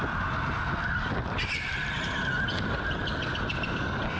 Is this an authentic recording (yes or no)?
yes